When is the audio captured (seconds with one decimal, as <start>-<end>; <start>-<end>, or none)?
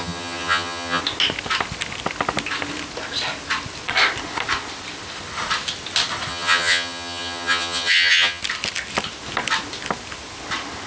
1.0-6.3; 8.4-10.9